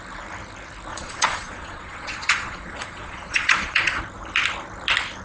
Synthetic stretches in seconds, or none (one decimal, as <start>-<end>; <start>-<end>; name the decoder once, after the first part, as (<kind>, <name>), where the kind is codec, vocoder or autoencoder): 0.9-4.0 (vocoder, Vocos)